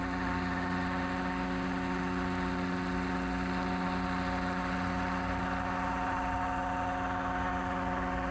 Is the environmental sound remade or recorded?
recorded